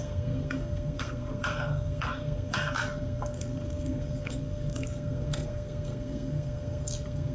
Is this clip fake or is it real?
fake